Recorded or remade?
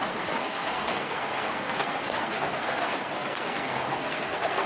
remade